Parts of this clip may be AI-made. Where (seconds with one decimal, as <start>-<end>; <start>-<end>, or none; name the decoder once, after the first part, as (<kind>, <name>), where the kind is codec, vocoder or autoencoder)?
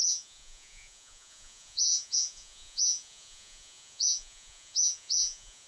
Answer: 0.0-5.7 (vocoder, Vocos)